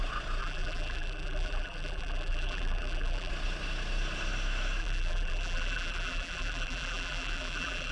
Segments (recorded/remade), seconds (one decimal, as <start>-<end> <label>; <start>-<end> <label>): 0.0-0.4 recorded; 0.4-3.3 remade; 3.3-4.8 recorded; 4.8-7.9 remade